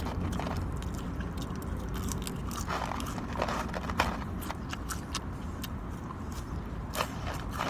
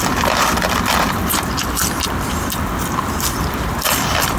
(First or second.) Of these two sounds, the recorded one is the first